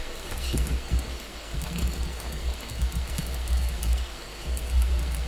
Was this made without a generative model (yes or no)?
no